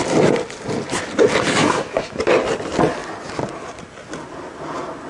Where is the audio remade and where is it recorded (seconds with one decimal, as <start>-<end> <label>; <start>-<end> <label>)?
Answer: 0.0-1.6 recorded; 1.6-2.2 remade; 2.2-5.1 recorded

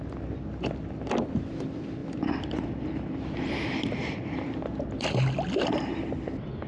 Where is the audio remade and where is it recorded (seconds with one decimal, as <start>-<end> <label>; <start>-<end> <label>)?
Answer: 0.0-6.7 recorded

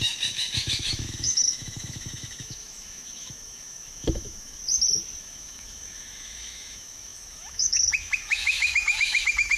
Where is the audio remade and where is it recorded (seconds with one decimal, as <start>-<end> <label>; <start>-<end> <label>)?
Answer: 0.0-4.6 remade; 4.6-5.2 recorded; 5.2-9.6 remade

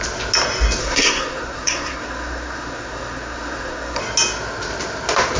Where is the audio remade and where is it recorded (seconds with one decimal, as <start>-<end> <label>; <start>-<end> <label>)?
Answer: 0.0-0.8 recorded; 0.8-4.0 remade; 4.0-5.4 recorded

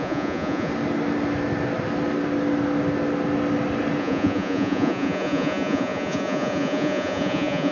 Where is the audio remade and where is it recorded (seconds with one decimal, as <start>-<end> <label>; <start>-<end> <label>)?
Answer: 0.0-0.7 remade; 0.7-4.0 recorded; 4.0-7.7 remade

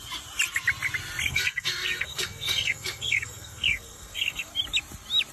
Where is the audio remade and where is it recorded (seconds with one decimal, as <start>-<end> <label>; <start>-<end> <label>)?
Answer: 0.0-1.3 recorded; 1.3-4.5 remade; 4.5-5.3 recorded

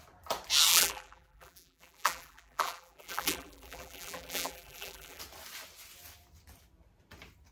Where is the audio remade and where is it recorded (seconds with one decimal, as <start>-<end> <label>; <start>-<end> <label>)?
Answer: 0.0-0.7 recorded; 0.7-5.2 remade; 5.2-7.5 recorded